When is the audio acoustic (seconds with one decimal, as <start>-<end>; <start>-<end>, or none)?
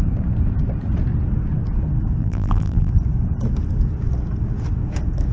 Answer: 0.0-2.2; 2.9-5.3